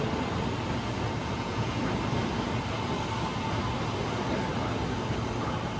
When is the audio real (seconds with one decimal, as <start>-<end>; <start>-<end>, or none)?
0.0-1.2; 1.8-5.8